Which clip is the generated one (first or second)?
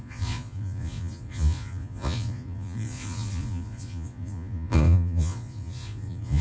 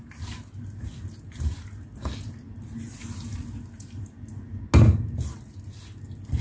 first